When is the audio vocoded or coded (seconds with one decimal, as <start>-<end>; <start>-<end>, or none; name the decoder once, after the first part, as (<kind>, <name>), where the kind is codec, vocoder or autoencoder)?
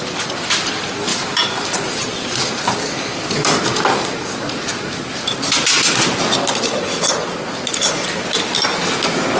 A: none